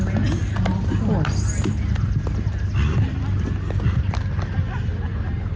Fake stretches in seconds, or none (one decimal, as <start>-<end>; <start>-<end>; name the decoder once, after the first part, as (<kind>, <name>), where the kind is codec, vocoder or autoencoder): none